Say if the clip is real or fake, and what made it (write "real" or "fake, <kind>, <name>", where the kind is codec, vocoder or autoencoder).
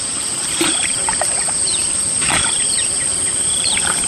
fake, vocoder, BigVGAN v2